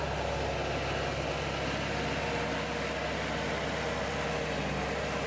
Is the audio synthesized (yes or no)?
no